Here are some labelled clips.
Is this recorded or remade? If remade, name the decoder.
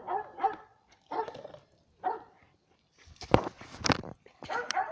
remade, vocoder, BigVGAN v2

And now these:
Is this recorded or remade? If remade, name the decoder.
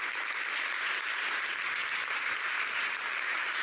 remade, vocoder, BigVGAN v2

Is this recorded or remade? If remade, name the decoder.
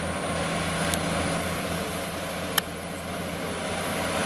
recorded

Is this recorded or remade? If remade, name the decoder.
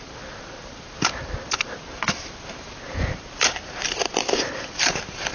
remade, vocoder, BigVGAN v2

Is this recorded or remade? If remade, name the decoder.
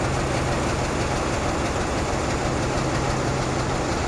recorded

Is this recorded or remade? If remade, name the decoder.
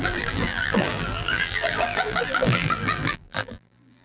remade, vocoder, BigVGAN v2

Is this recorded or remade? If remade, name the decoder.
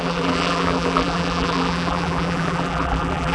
remade, vocoder, BigVGAN v2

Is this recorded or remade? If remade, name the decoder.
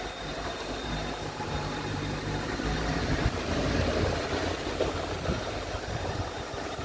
remade, vocoder, BigVGAN v2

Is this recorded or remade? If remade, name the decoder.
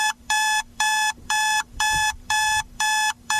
remade, vocoder, BigVGAN v2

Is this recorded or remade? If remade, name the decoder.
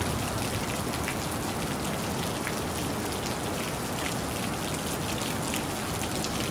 recorded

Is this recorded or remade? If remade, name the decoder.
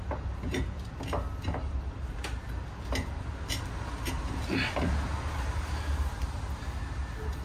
recorded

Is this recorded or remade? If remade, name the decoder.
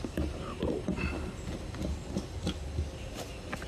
recorded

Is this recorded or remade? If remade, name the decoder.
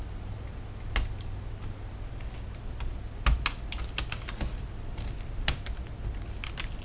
recorded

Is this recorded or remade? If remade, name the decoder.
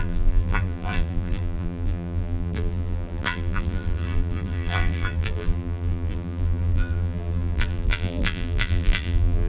remade, vocoder, BigVGAN v2